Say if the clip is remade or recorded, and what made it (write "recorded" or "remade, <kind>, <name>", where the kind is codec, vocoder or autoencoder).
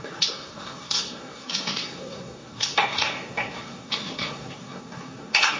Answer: remade, codec, SNAC